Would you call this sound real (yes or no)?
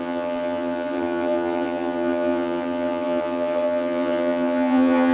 no